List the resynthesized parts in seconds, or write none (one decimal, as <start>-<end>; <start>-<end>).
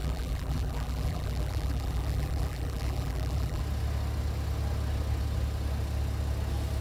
0.0-3.6